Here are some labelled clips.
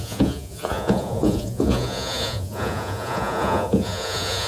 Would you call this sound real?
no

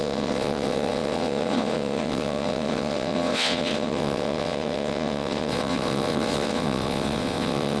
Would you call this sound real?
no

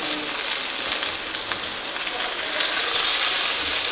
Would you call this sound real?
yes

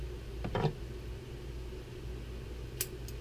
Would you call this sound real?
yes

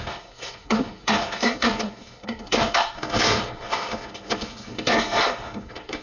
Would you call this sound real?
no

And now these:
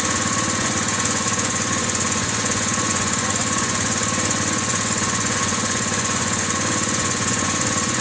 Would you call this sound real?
no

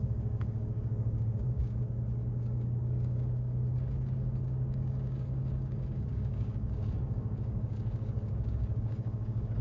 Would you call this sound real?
no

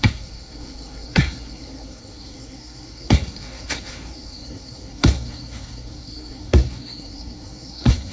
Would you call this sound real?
no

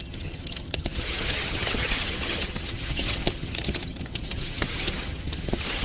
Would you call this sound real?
no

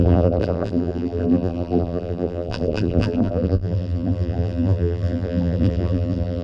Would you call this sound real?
no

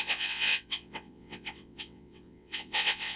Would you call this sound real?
no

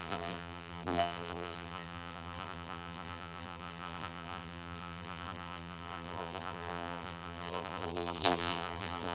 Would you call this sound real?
no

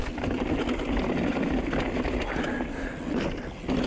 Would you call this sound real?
yes